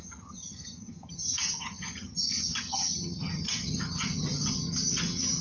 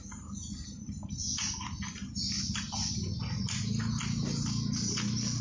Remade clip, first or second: first